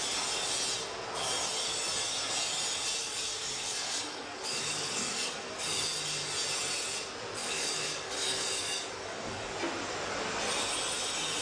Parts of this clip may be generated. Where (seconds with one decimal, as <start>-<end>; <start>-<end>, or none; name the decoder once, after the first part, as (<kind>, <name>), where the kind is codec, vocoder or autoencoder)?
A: 3.0-5.8 (codec, DAC); 7.4-9.5